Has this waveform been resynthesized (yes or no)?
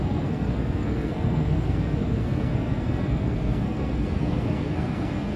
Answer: yes